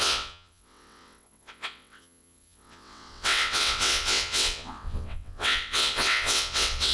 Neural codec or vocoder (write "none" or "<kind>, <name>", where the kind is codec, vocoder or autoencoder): vocoder, WaveNeXt